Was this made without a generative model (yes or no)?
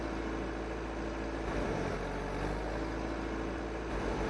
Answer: yes